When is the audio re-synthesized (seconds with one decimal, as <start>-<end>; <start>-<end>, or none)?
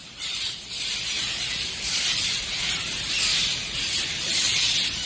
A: 0.0-3.1; 3.6-5.1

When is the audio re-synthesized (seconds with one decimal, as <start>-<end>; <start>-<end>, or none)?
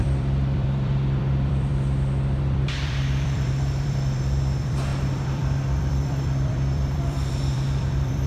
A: 0.0-1.7; 2.4-8.3